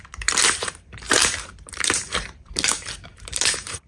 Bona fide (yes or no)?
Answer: no